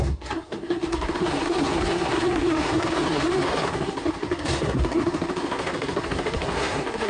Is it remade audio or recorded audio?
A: remade